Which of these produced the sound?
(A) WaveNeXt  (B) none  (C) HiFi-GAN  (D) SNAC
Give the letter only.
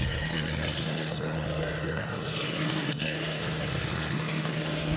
D